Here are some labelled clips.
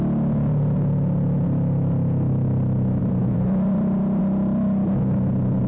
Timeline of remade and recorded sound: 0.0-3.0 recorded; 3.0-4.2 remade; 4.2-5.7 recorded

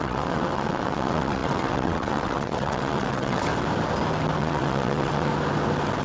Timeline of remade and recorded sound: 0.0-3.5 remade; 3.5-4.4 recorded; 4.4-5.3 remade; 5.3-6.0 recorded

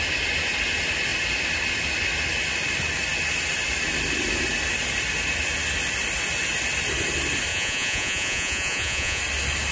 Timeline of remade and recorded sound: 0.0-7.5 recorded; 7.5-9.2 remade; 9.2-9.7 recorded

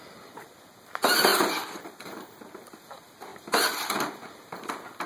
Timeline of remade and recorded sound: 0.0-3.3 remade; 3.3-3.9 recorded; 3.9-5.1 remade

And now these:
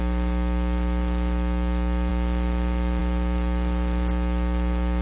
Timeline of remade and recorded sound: 0.0-2.1 remade; 2.1-3.0 recorded; 3.0-5.0 remade